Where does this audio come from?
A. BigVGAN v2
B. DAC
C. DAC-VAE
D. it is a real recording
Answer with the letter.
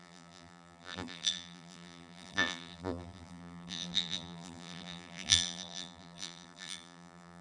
A